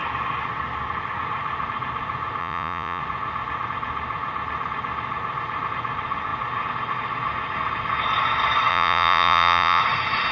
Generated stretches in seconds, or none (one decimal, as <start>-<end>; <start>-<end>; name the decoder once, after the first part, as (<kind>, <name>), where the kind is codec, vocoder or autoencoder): 2.4-3.0 (vocoder, Vocos); 8.7-9.8